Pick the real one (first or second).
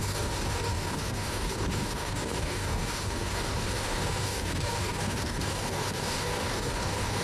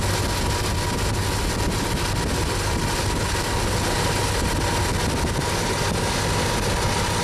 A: second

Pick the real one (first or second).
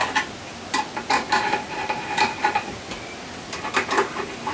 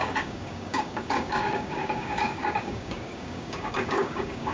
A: first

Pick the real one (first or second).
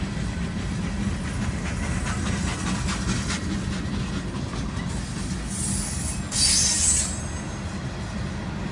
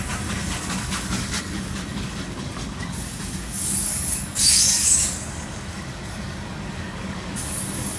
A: first